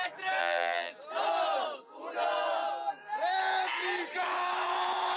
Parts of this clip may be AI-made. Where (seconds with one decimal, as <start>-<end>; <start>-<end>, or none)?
0.4-0.9